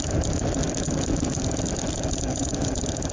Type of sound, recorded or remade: recorded